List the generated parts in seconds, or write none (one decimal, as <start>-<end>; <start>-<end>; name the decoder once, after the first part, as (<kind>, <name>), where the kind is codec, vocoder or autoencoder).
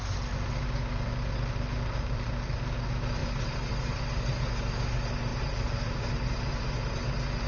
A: 2.0-2.7 (vocoder, BigVGAN v2); 3.2-3.7; 5.3-6.6